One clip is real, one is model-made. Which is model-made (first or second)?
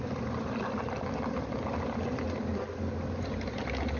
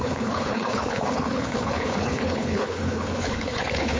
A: second